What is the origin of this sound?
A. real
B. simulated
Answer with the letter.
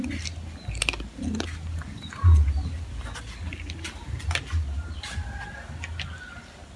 A